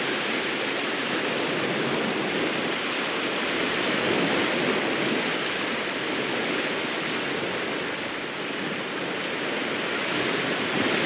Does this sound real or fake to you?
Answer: real